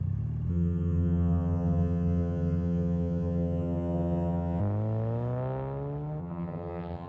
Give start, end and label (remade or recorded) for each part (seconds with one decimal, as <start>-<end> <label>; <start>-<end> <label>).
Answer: 0.0-0.5 recorded; 0.5-4.6 remade; 4.6-6.2 recorded; 6.2-7.1 remade